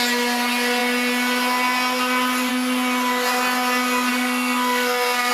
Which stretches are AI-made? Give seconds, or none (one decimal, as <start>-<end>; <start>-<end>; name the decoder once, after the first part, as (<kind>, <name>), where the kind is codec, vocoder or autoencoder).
4.1-5.3 (codec, SNAC)